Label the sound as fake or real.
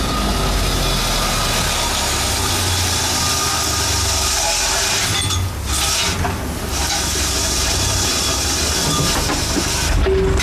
real